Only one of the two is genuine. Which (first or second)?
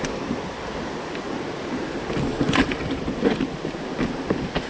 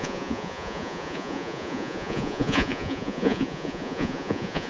first